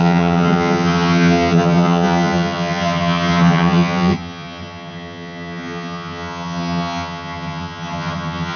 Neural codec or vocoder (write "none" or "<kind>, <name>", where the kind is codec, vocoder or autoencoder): vocoder, HiFi-GAN